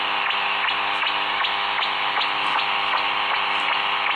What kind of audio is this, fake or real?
real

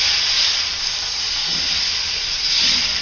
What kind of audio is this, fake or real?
real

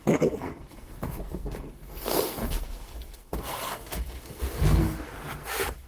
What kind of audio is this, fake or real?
fake